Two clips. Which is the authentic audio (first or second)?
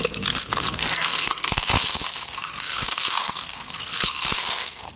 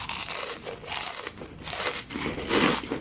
second